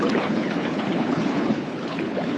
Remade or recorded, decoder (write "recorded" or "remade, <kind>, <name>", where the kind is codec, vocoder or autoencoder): remade, codec, HILCodec